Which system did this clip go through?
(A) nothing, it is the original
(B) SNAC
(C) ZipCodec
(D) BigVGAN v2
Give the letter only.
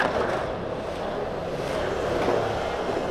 A